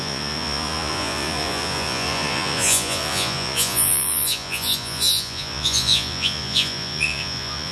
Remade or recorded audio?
remade